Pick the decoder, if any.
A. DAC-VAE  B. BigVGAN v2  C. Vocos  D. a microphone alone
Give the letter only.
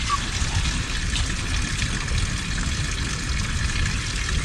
D